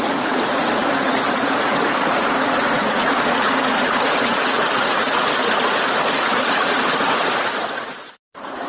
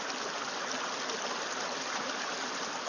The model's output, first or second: first